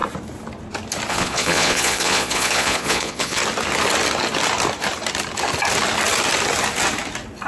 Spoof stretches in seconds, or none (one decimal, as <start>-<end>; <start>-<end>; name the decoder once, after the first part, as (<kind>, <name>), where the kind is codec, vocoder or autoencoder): 1.1-3.4 (vocoder, Vocos)